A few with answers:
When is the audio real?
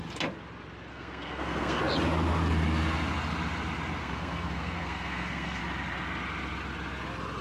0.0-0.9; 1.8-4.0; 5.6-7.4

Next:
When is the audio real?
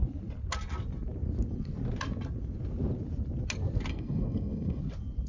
0.0-3.9; 4.8-5.3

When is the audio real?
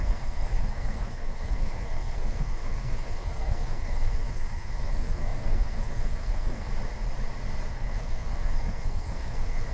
6.7-7.7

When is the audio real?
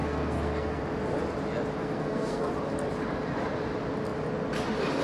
0.8-1.8; 2.5-5.0